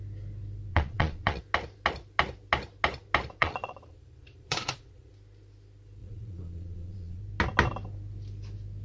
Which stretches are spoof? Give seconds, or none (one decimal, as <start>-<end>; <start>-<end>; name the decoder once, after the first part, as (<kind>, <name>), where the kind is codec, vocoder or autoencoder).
0.7-1.4 (vocoder, Vocos); 3.4-5.1; 6.0-7.2